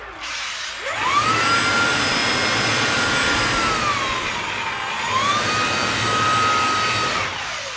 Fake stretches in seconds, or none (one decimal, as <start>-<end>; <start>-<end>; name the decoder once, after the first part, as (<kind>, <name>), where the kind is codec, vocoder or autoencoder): none